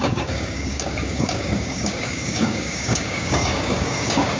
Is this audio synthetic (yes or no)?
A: yes